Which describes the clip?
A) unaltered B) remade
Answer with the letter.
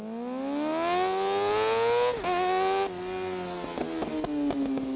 A